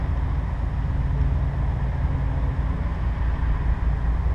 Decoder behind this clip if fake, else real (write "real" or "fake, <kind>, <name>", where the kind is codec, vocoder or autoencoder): real